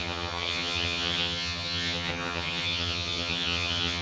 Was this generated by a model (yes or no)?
yes